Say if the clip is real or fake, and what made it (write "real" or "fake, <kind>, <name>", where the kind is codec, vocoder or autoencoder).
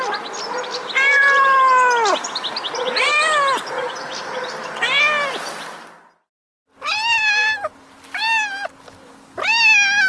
real